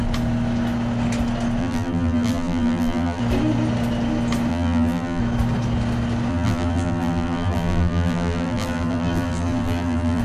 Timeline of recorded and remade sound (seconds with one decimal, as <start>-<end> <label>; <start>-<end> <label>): 0.0-1.6 recorded; 1.6-3.2 remade; 3.2-4.5 recorded; 4.5-5.2 remade; 5.2-6.3 recorded; 6.3-10.2 remade